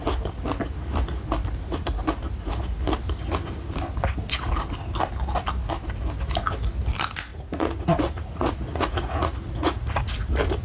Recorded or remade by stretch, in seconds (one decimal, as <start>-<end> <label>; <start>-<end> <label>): 0.0-7.3 recorded; 7.3-10.1 remade; 10.1-10.6 recorded